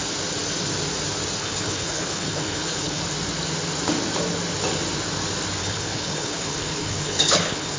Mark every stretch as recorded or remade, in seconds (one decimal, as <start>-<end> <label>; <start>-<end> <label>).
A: 0.0-1.4 recorded; 1.4-3.0 remade; 3.0-5.6 recorded; 5.6-7.8 remade

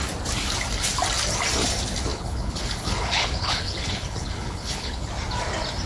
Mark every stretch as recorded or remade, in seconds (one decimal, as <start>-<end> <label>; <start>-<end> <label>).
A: 0.0-2.1 recorded; 2.1-5.1 remade; 5.1-5.9 recorded

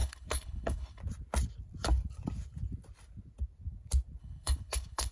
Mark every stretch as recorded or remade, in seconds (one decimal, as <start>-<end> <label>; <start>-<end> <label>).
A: 0.0-1.0 remade; 1.0-4.2 recorded; 4.2-5.1 remade

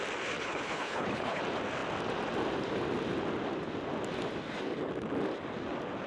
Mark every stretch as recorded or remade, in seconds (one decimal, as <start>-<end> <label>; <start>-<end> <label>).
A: 0.0-0.4 recorded; 0.4-1.4 remade; 1.4-6.1 recorded

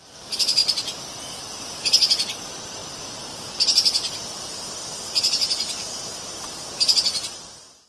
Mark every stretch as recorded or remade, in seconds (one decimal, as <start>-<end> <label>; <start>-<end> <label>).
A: 0.0-7.9 recorded

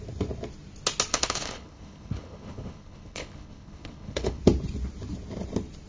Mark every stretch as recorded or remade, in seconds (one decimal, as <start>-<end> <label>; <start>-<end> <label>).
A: 0.0-1.1 recorded; 1.1-4.4 remade; 4.4-5.9 recorded

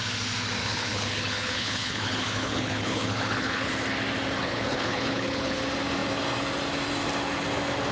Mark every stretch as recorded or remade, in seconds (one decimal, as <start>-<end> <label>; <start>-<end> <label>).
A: 0.0-0.6 recorded; 0.6-3.7 remade; 3.7-4.4 recorded; 4.4-5.6 remade; 5.6-7.9 recorded

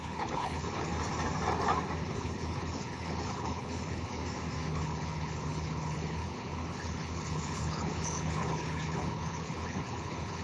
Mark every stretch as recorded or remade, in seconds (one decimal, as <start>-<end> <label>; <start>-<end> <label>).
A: 0.0-0.9 remade; 0.9-2.1 recorded; 2.1-4.2 remade; 4.2-4.7 recorded; 4.7-10.4 remade